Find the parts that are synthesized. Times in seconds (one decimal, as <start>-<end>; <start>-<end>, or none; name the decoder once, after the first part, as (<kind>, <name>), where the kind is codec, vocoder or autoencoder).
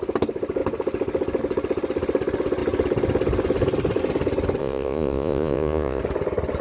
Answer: 4.6-6.0 (vocoder, Vocos)